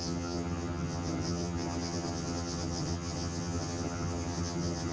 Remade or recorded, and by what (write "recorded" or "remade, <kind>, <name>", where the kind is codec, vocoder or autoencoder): remade, vocoder, HiFi-GAN